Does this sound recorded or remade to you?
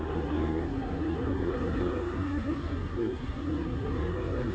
remade